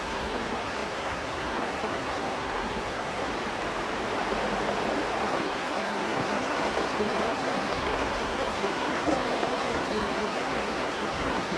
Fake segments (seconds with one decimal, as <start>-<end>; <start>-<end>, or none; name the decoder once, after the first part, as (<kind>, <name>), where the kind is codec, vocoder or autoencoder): 0.0-3.3 (codec, SNAC); 5.2-11.6